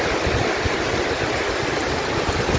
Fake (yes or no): no